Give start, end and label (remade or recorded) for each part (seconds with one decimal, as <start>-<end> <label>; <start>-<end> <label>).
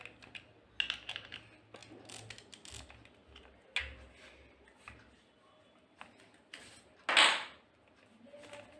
0.0-8.8 recorded